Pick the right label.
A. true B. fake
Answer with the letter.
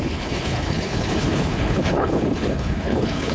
B